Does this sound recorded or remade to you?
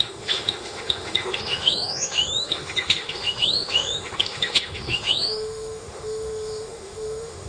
remade